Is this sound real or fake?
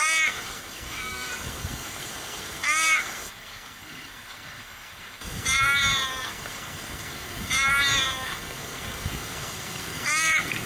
fake